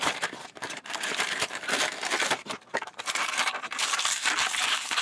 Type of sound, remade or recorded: remade